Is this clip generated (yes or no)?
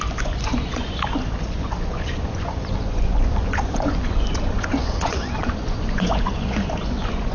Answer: yes